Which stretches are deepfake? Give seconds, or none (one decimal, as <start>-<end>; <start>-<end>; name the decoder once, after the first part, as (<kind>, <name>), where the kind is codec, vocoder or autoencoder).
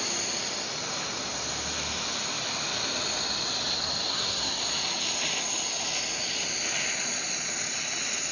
4.1-4.6 (codec, SNAC)